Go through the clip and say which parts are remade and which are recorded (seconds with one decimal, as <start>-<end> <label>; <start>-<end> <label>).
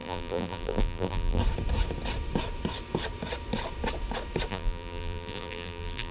0.0-1.4 remade; 1.4-4.5 recorded; 4.5-6.1 remade